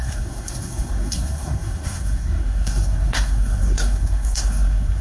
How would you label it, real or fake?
fake